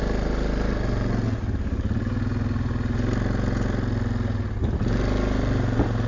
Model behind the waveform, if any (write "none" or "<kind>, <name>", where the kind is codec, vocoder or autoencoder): none